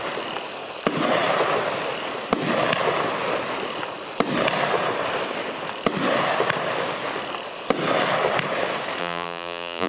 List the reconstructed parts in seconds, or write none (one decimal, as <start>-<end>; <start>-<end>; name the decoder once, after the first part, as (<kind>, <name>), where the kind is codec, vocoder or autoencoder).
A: 9.0-9.9 (vocoder, BigVGAN v2)